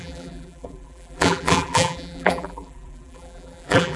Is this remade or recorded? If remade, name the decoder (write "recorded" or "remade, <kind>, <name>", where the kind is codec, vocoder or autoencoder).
remade, vocoder, BigVGAN v2